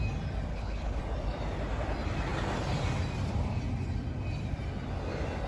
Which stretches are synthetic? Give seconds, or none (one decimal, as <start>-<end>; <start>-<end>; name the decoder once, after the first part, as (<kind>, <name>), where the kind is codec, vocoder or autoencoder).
0.5-1.0 (codec, HILCodec)